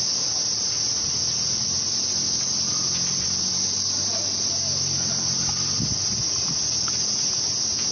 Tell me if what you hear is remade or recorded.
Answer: recorded